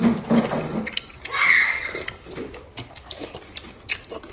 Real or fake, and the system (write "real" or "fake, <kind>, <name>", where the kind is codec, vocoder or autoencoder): real